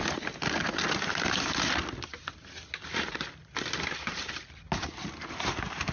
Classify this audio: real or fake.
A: real